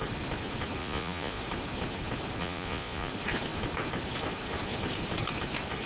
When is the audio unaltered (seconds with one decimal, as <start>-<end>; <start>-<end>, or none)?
0.0-0.8; 1.4-2.4; 3.1-5.9